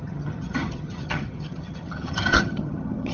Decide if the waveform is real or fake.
fake